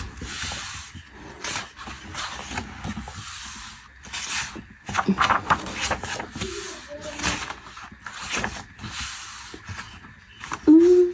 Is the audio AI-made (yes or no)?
no